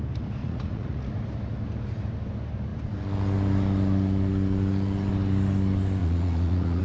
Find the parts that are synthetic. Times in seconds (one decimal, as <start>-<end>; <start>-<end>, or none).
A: 0.4-1.1; 6.0-6.8

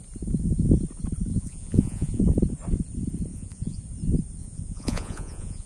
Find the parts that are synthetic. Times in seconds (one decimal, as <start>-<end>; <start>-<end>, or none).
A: 1.3-2.2; 3.3-3.8; 4.4-5.7

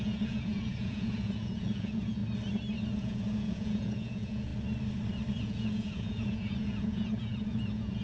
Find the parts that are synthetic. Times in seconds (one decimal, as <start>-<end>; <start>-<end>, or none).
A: 0.0-2.2; 2.9-4.5; 5.3-8.0

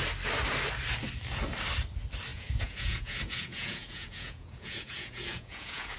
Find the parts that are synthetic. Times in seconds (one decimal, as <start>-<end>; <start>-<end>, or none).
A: 2.3-6.0